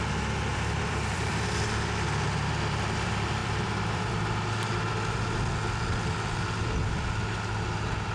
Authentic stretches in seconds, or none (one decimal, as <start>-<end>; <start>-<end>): 0.0-0.5; 1.3-3.4; 4.1-8.1